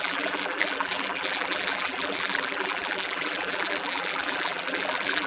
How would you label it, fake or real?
fake